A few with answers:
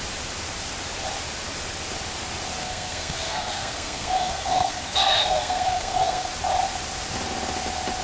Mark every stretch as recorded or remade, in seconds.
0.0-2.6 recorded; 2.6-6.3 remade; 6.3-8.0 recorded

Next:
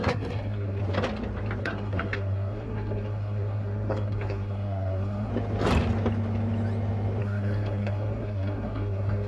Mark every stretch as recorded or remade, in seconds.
0.0-0.8 remade; 0.8-1.6 recorded; 1.6-5.3 remade; 5.3-7.2 recorded; 7.2-9.3 remade

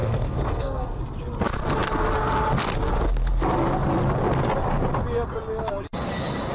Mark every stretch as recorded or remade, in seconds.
0.0-1.0 remade; 1.0-6.5 recorded

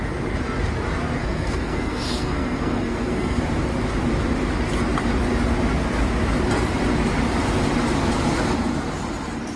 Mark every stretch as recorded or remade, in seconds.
0.0-1.2 recorded; 1.2-3.4 remade; 3.4-9.6 recorded

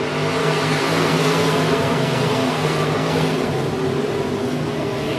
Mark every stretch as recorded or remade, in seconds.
0.0-0.4 recorded; 0.4-3.5 remade; 3.5-4.4 recorded; 4.4-5.2 remade

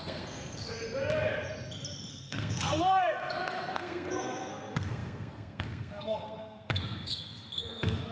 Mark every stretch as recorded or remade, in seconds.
0.0-0.8 remade; 0.8-2.1 recorded; 2.1-8.1 remade

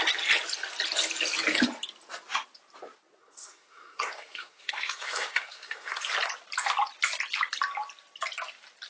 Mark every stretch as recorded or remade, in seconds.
0.0-3.2 recorded; 3.2-6.0 remade; 6.0-8.9 recorded